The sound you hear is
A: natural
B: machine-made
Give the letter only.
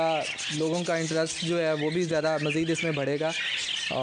A